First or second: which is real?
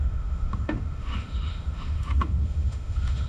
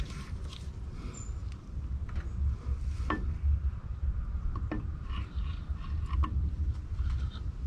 second